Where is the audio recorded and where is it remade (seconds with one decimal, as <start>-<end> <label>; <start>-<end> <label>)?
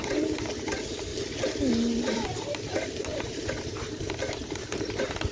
0.0-1.1 remade; 1.1-1.7 recorded; 1.7-5.3 remade